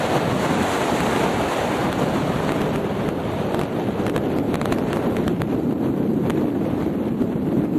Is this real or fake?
fake